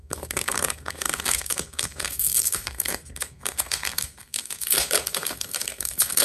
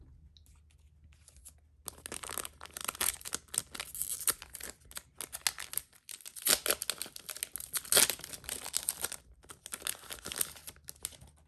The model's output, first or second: first